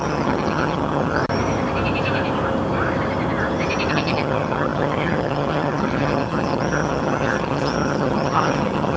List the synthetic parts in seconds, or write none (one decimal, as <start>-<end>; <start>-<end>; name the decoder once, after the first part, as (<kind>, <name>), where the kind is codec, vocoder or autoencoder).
0.0-1.2 (vocoder, HiFi-GAN); 3.9-9.0